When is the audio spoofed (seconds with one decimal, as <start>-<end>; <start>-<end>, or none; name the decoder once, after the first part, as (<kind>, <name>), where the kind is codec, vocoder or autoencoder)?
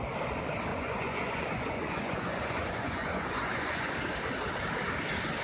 0.7-3.9 (vocoder, Vocos)